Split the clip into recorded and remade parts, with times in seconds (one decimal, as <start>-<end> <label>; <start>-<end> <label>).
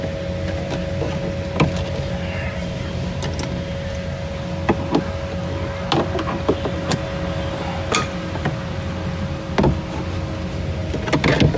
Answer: 0.0-11.6 recorded